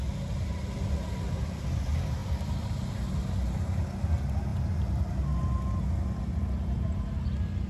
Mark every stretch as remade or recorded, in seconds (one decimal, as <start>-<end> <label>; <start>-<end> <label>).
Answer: 0.0-7.7 recorded